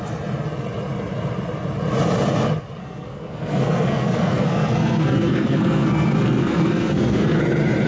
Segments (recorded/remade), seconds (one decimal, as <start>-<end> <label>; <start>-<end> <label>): 0.0-2.8 recorded; 2.8-7.4 remade; 7.4-7.9 recorded